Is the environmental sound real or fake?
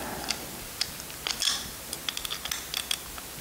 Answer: real